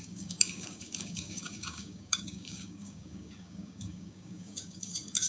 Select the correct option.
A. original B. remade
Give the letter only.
B